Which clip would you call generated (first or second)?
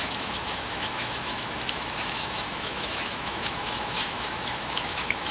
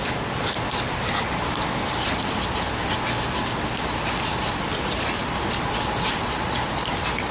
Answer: first